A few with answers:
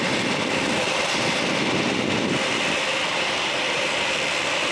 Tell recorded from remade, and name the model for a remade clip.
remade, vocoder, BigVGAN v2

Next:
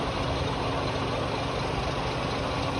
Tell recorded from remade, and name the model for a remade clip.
recorded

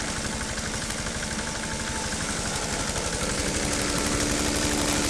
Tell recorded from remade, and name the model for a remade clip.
recorded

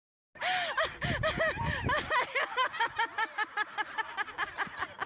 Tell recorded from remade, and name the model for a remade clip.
recorded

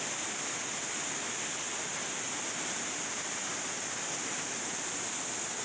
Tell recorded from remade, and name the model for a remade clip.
recorded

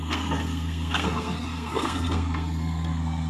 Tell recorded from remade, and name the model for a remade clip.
remade, codec, SNAC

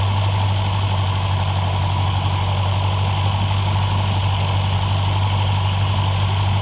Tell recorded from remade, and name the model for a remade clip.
recorded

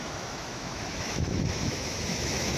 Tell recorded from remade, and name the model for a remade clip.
remade, autoencoder, DAC-VAE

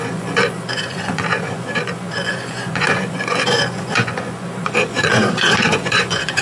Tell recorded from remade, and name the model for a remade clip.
remade, vocoder, Vocos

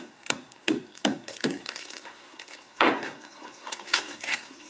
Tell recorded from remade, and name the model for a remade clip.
remade, codec, SNAC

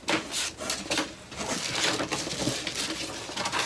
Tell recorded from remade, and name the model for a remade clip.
recorded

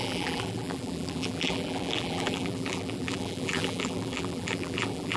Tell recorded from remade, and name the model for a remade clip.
remade, vocoder, BigVGAN v2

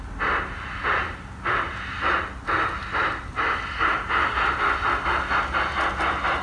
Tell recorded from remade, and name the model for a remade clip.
recorded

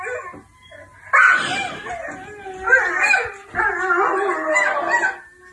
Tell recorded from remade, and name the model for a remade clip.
recorded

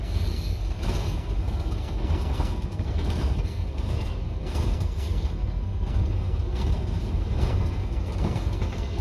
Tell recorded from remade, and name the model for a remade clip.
remade, codec, SNAC